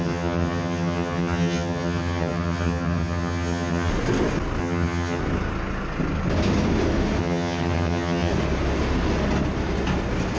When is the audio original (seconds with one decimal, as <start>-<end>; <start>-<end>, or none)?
3.9-4.6; 5.2-7.2; 8.3-10.4